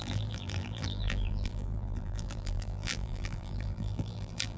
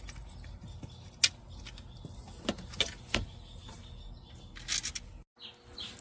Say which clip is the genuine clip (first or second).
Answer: second